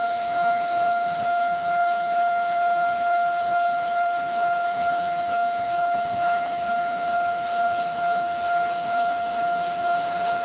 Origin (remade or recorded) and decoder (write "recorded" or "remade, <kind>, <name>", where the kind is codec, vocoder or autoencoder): remade, codec, HILCodec